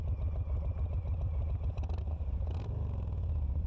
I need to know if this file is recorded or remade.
recorded